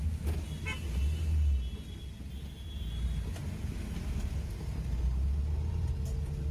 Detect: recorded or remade recorded